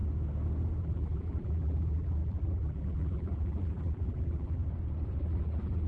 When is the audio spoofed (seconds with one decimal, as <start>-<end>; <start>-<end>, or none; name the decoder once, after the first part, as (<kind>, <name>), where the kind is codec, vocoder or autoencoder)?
0.8-4.6 (vocoder, BigVGAN v2); 5.2-5.9